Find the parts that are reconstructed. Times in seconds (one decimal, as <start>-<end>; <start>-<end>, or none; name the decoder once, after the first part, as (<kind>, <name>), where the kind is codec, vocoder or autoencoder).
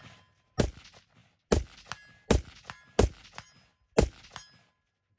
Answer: none